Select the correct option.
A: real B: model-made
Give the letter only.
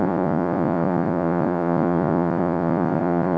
B